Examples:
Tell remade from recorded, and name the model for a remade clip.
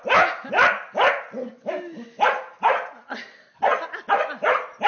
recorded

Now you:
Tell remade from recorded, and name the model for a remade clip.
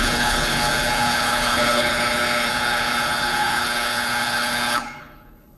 remade, codec, HILCodec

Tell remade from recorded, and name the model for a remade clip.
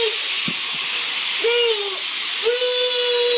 recorded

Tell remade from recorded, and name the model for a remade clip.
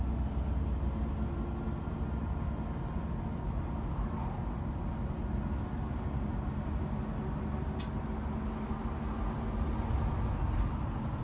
recorded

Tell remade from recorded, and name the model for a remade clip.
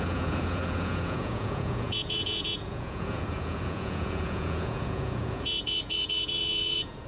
remade, vocoder, Vocos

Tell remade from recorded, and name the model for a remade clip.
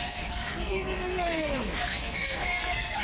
remade, codec, SNAC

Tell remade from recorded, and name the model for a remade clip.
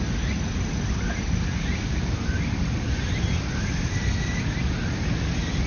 recorded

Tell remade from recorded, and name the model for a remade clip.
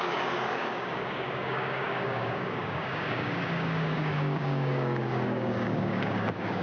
remade, codec, DAC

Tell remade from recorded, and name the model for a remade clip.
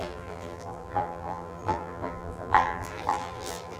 remade, vocoder, BigVGAN v2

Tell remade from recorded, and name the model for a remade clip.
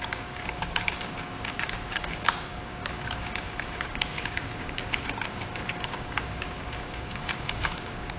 remade, codec, DAC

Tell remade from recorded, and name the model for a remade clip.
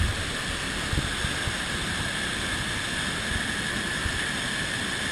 recorded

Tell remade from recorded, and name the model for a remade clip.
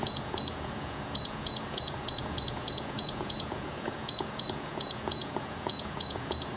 remade, vocoder, Vocos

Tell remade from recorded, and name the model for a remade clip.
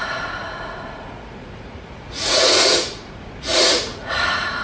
remade, vocoder, Vocos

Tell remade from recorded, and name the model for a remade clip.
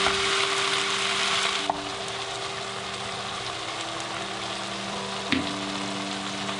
recorded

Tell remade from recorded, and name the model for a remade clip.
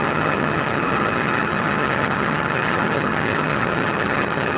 remade, vocoder, HiFi-GAN